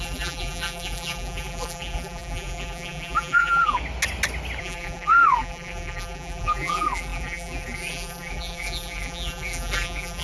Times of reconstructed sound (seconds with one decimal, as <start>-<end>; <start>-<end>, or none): 0.0-3.8; 4.6-10.2